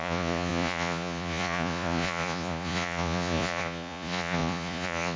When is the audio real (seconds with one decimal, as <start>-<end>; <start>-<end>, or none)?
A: none